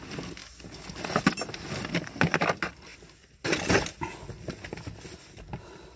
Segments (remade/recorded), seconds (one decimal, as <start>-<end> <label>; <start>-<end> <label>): 0.0-6.0 recorded